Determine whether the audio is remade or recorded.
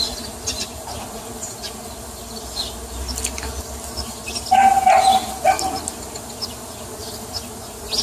recorded